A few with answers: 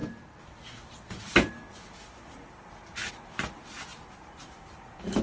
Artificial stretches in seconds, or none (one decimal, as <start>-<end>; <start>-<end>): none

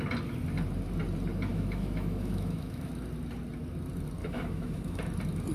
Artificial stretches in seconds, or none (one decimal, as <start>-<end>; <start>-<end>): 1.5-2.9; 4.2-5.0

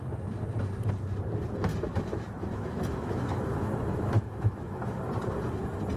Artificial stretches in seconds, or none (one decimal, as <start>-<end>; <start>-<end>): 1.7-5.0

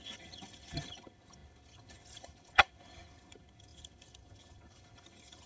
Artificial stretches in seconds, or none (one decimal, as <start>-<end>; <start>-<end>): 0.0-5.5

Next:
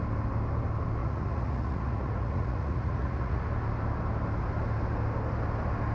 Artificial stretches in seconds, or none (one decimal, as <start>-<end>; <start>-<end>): 1.0-3.4

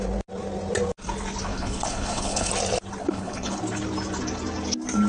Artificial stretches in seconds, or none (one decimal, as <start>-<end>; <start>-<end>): 1.5-2.5; 3.0-3.6

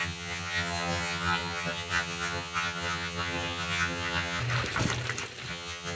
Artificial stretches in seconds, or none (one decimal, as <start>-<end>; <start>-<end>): 0.0-4.4; 5.5-6.0

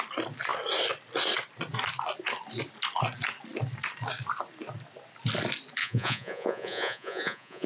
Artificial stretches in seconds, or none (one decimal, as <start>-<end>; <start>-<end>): 5.8-7.7